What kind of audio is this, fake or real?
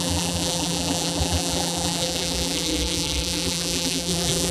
fake